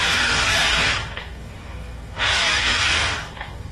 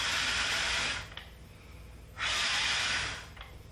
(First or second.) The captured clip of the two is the second